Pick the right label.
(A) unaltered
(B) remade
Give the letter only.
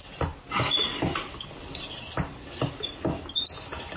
A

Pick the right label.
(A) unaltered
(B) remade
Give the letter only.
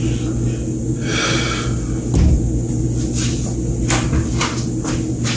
A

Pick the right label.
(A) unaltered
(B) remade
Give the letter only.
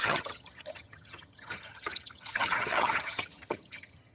B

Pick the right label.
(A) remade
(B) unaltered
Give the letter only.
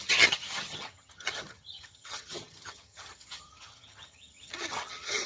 A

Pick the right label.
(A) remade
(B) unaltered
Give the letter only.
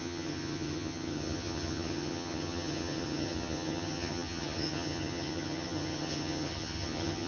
A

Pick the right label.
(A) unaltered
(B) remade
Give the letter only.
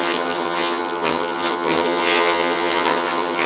B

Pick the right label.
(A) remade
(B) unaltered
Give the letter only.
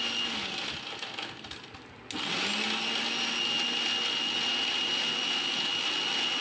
B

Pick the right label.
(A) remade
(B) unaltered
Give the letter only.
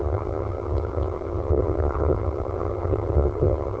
A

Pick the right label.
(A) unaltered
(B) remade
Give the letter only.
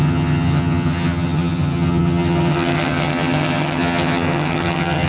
B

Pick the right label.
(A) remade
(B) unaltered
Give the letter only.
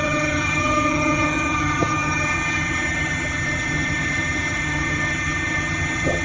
A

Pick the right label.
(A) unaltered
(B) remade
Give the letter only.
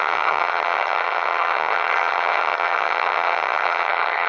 B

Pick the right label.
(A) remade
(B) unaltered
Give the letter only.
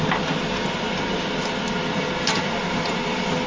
B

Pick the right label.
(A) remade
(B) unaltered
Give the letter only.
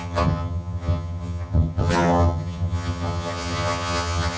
A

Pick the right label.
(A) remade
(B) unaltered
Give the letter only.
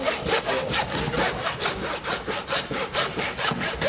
B